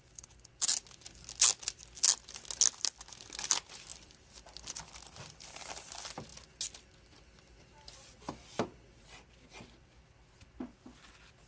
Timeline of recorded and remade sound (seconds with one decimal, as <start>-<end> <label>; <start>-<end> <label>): 0.0-11.5 recorded